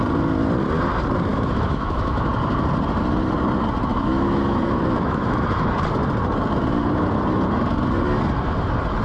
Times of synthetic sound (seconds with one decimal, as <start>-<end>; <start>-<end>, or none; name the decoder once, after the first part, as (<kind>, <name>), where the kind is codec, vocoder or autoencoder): 1.3-2.3 (autoencoder, DAC-VAE); 3.9-5.7